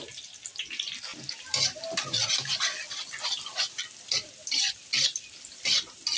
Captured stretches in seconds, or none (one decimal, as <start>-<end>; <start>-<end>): 0.0-6.2